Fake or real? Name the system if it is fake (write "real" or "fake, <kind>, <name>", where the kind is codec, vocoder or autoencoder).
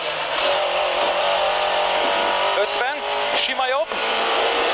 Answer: real